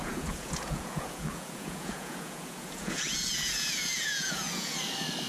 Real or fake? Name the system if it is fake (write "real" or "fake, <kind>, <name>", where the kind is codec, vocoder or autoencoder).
fake, vocoder, Vocos